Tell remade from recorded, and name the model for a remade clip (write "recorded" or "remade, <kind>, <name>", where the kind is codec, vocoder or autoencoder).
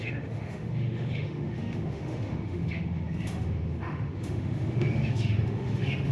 remade, autoencoder, DAC-VAE